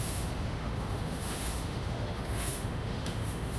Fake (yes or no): yes